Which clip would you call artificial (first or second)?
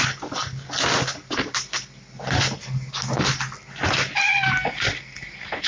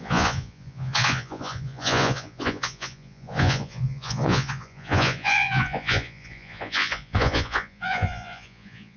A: second